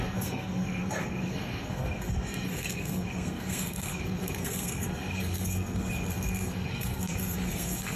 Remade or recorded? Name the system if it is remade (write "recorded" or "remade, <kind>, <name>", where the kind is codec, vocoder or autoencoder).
remade, codec, SNAC